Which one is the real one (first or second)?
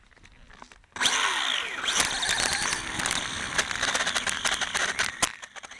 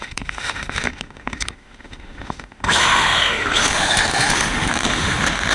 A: first